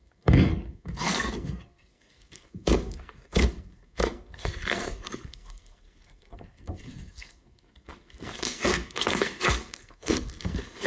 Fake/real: fake